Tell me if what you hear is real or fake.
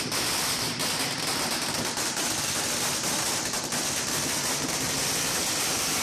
real